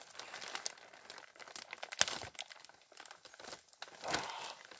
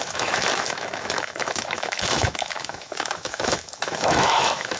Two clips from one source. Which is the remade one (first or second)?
second